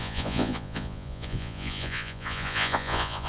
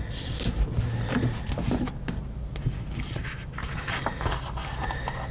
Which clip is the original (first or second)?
second